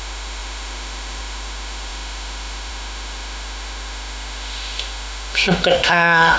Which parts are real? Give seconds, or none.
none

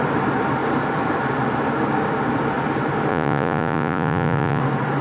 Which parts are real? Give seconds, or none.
0.0-3.1; 4.6-5.0

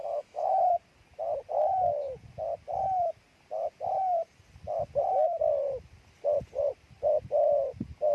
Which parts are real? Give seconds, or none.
0.7-8.1

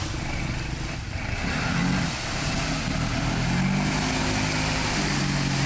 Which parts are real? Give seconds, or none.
0.0-5.7

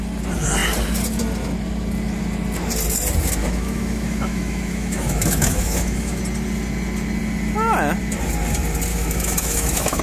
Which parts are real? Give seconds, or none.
0.0-3.4; 6.2-8.9

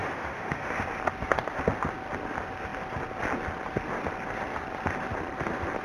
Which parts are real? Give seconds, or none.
0.7-5.8